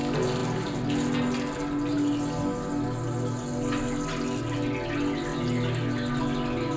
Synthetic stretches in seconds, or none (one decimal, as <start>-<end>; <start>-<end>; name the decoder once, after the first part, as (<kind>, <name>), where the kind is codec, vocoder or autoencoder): none

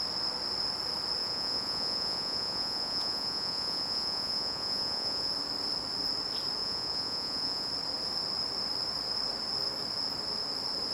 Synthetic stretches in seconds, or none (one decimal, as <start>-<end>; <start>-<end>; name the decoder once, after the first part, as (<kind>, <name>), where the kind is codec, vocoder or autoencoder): 1.2-5.3 (vocoder, Vocos); 6.6-7.7

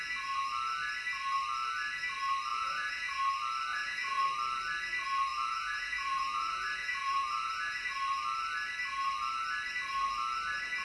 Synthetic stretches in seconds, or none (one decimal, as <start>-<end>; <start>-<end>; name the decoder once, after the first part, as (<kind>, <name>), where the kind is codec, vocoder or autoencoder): 2.5-3.2 (vocoder, Vocos); 3.7-4.2; 5.3-7.9

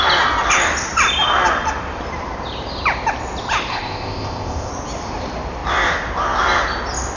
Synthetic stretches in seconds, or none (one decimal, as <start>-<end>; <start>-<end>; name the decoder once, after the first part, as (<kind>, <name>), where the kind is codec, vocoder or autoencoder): 3.7-4.7 (codec, ZipCodec)

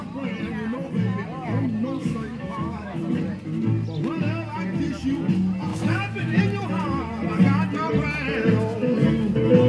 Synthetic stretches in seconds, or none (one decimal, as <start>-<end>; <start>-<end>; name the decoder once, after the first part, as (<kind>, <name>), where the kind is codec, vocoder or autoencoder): 2.0-3.0 (autoencoder, DAC-VAE); 5.7-6.4

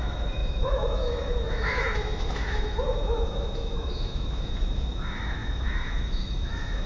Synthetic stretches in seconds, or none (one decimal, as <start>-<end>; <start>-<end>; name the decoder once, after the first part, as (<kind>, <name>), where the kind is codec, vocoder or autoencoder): 0.0-6.9 (autoencoder, DAC-VAE)

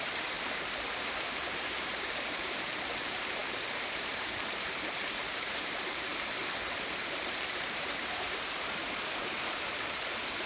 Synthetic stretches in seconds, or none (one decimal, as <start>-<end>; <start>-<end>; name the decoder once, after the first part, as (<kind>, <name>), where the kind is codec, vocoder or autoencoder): 0.0-6.1 (vocoder, BigVGAN v2); 7.0-10.5